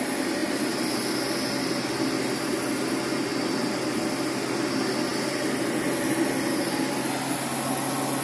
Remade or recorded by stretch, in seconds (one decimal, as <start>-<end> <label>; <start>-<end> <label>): 0.0-8.2 recorded